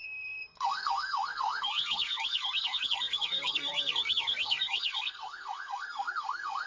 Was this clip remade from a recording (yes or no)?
yes